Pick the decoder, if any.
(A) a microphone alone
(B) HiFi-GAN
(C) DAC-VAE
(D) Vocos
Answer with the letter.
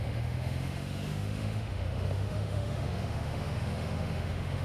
C